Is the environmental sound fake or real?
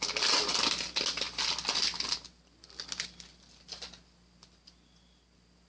real